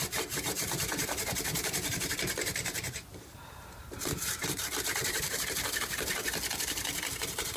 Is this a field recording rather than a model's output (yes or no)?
no